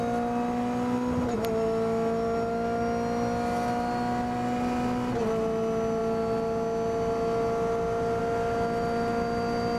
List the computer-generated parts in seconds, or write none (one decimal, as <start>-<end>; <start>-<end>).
none